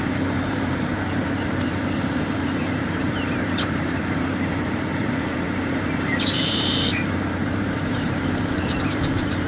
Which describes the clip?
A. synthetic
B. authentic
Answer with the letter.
A